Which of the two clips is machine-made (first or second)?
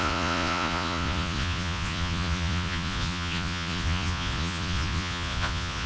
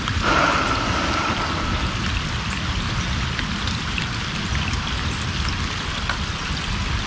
first